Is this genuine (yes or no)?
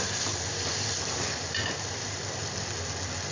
yes